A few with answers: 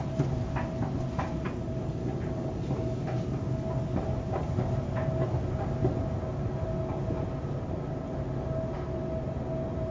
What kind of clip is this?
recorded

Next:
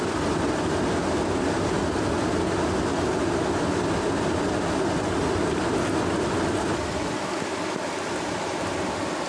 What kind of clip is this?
recorded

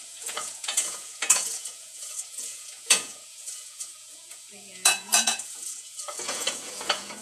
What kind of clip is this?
remade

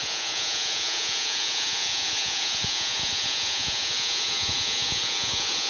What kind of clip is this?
remade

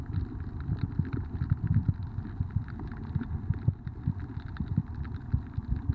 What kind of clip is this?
recorded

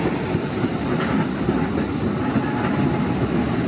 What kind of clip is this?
recorded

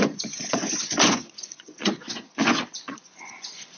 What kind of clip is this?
remade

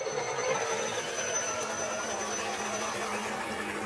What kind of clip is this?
recorded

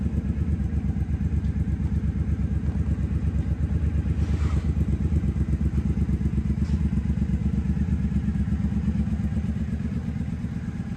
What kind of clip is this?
recorded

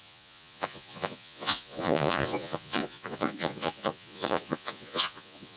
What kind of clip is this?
remade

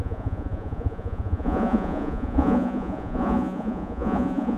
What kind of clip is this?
remade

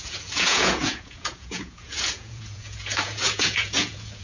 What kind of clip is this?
remade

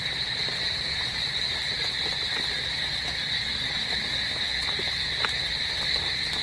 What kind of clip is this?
recorded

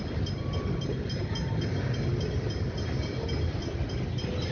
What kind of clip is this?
recorded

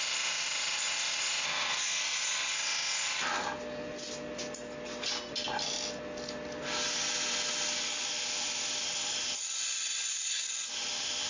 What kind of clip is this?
recorded